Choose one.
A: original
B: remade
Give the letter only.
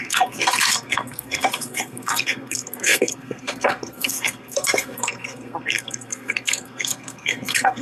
B